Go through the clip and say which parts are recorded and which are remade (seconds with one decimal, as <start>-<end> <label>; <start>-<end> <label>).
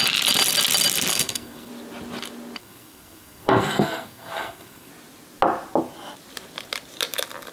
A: 0.0-1.1 recorded; 1.1-1.7 remade; 1.7-2.6 recorded; 2.6-4.9 remade; 4.9-7.5 recorded